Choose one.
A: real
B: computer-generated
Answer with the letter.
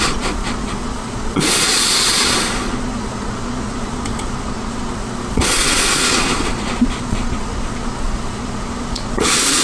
B